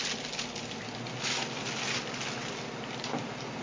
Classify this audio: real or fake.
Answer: real